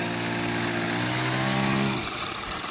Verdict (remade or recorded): recorded